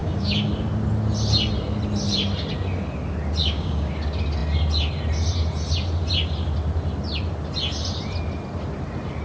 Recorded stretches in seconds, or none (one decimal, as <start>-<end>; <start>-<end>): 0.5-3.4; 3.9-9.2

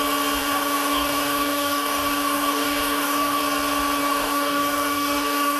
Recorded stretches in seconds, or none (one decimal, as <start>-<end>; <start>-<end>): 0.0-0.4; 3.4-4.0

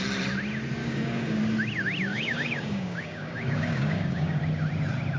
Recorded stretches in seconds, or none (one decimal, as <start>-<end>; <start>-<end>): 0.0-0.8; 1.4-2.1; 4.4-5.2

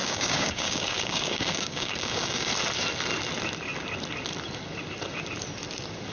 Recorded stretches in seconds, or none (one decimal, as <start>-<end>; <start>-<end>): 2.5-6.1

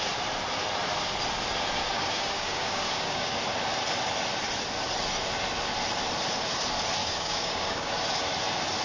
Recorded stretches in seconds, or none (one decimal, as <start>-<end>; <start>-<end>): 0.0-1.8; 3.4-7.0; 8.0-8.8

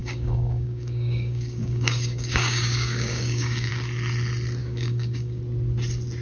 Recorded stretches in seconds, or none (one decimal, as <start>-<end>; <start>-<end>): 3.7-4.6; 5.4-6.2